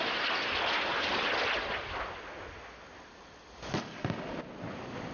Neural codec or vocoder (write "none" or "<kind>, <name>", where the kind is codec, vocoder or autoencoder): none